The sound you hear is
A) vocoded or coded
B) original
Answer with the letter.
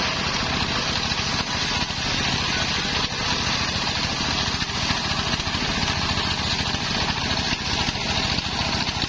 B